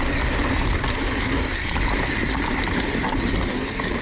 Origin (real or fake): real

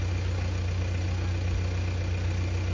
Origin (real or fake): real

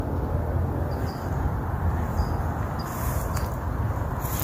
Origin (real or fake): real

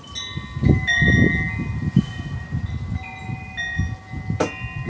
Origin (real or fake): real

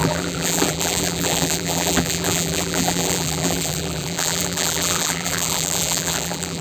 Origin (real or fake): fake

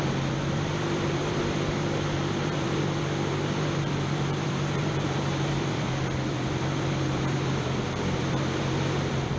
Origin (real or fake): fake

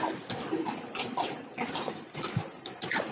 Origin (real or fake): real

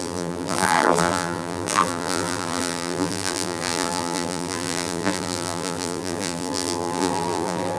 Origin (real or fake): fake